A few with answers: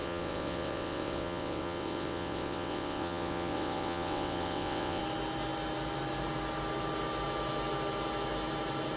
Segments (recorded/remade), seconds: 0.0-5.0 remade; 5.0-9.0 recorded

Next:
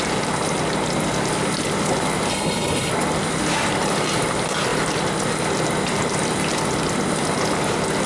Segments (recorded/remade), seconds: 0.0-2.3 recorded; 2.3-2.9 remade; 2.9-8.1 recorded

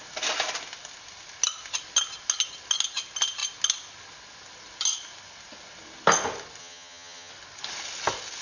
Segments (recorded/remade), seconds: 0.0-6.6 recorded; 6.6-7.3 remade; 7.3-8.4 recorded

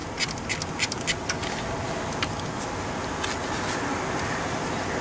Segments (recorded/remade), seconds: 0.0-5.0 recorded